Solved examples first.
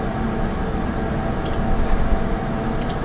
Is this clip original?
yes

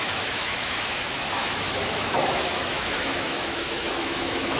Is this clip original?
no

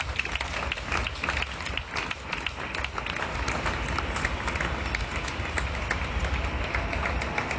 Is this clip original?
yes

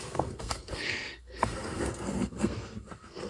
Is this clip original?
no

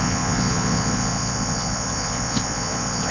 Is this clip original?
no